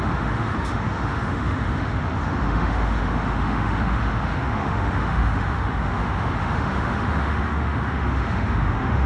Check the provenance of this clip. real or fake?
fake